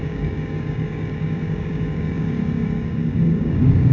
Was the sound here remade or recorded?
remade